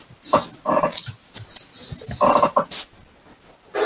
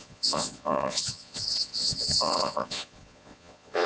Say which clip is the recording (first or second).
first